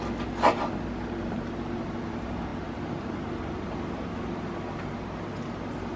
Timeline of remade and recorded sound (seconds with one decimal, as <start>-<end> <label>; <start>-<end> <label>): 0.0-6.0 recorded